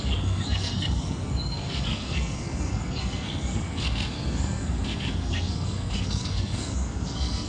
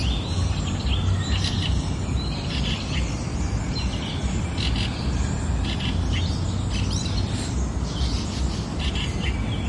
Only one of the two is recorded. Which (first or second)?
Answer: second